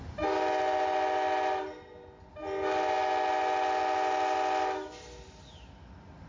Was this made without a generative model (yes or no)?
yes